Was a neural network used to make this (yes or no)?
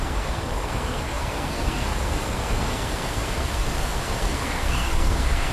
yes